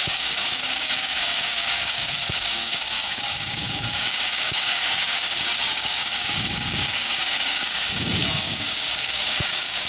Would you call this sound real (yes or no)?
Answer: no